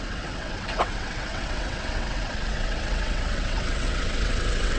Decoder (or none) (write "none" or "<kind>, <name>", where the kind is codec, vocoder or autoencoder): vocoder, WaveNeXt